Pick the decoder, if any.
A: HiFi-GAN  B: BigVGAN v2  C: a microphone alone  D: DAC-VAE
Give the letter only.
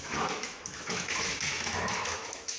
D